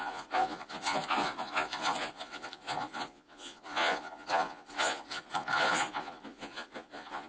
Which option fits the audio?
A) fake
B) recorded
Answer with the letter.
A